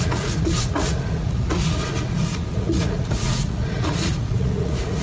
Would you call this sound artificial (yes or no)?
yes